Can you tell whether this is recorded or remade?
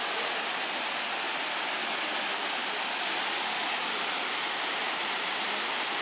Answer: recorded